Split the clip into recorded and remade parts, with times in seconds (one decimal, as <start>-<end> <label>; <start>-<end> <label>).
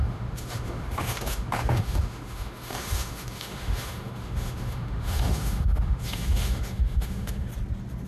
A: 0.0-7.5 remade; 7.5-8.1 recorded